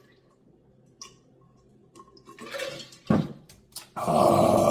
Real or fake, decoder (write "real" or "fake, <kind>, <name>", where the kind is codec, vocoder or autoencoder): real